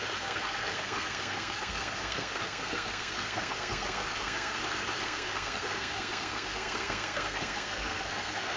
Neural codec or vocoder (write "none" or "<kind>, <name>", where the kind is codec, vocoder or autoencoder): codec, SNAC